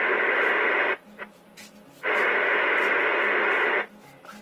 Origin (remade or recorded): recorded